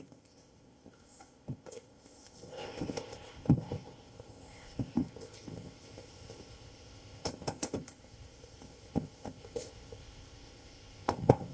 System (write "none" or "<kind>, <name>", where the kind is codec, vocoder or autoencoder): codec, ZipCodec